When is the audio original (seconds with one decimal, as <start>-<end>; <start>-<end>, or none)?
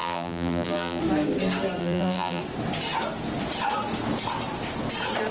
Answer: 1.0-1.8; 2.4-5.3